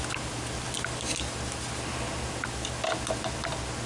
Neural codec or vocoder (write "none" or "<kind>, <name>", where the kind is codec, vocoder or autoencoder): none